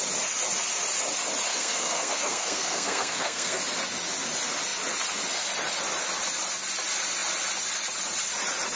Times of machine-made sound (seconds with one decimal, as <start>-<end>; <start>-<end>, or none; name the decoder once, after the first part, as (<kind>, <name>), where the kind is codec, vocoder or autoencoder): 1.5-3.6 (codec, SNAC)